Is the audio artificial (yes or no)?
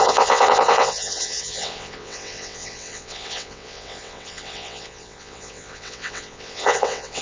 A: yes